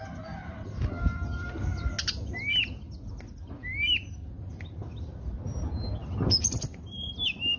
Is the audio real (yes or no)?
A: yes